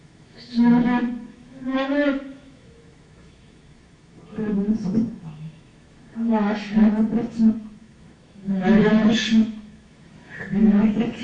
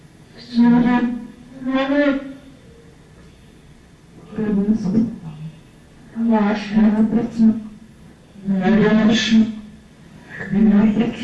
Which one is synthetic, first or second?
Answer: first